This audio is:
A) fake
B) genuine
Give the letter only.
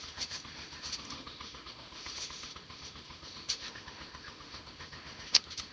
A